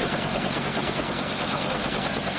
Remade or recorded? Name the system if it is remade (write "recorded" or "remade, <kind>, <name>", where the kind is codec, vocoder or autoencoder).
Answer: remade, codec, SNAC